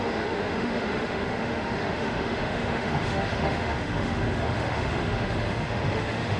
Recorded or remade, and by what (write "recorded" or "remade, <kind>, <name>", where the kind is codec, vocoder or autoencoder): remade, autoencoder, DAC-VAE